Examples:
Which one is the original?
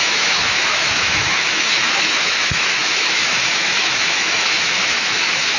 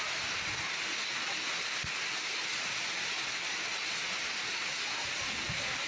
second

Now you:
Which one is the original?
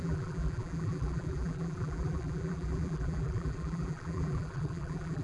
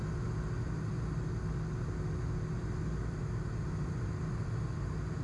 second